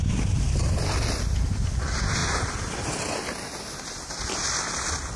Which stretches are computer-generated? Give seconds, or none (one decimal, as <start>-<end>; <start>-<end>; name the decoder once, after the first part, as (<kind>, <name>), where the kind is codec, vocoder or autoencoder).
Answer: none

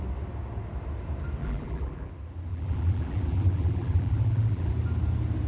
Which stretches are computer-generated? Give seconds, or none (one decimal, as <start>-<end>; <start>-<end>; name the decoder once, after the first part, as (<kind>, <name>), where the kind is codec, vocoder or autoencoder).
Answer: 1.4-2.1 (vocoder, BigVGAN v2); 2.5-4.7

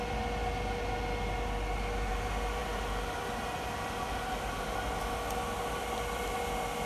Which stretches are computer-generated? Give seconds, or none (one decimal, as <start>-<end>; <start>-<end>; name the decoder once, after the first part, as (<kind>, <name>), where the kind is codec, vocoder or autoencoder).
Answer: none

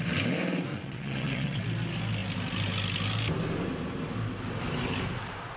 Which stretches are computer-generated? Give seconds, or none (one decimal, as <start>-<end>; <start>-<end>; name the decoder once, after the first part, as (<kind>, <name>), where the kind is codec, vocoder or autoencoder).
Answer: 0.7-1.6 (vocoder, WaveNeXt)

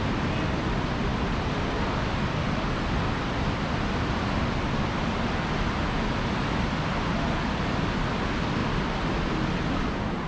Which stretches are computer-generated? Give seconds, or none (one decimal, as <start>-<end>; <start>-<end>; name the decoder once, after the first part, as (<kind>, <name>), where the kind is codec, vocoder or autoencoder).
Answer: none